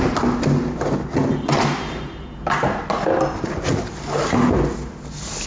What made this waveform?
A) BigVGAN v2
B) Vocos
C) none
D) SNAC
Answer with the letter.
C